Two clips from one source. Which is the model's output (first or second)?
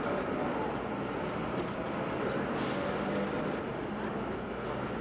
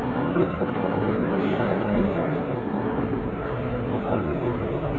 second